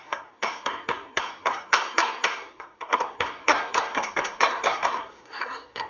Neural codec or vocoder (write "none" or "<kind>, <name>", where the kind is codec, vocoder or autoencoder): codec, SNAC